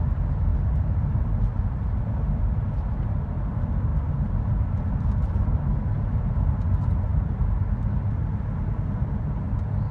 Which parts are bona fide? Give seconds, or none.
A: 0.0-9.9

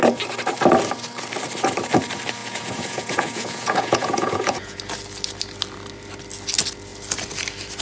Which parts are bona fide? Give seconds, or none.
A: 0.0-2.4; 4.8-7.8

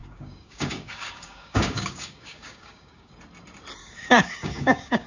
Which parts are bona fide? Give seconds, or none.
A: 3.1-3.8

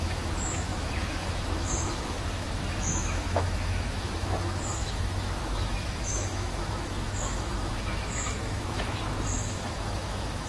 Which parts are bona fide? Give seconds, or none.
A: none

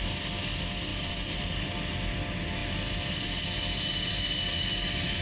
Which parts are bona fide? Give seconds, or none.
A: 0.0-0.9; 1.5-5.2

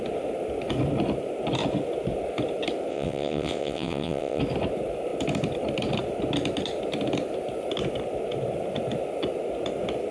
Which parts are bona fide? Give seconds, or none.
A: 0.0-2.9; 4.4-10.1

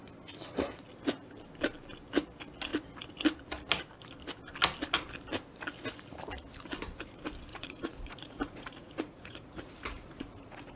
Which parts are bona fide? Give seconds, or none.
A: 0.0-7.5

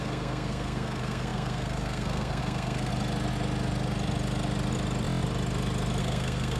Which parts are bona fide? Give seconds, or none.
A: 2.9-6.0